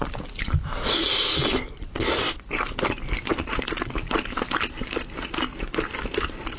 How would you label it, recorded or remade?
recorded